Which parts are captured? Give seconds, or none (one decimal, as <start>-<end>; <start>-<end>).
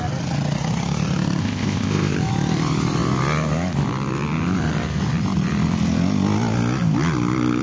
0.0-1.4; 2.1-7.6